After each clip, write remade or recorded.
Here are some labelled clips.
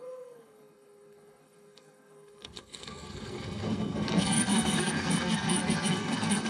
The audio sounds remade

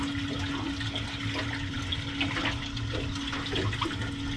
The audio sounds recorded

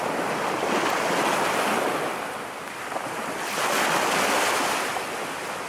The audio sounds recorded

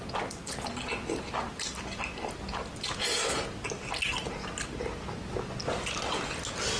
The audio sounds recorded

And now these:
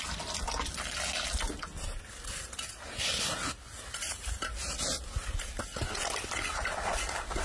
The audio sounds recorded